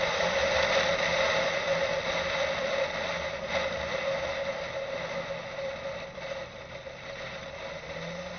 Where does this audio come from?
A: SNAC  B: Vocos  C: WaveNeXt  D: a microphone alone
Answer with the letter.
D